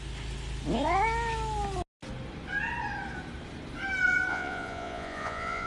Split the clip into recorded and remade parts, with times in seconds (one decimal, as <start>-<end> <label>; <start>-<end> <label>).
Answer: 0.0-4.3 recorded; 4.3-5.7 remade